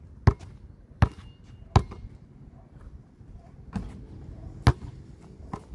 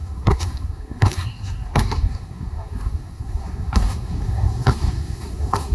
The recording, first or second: first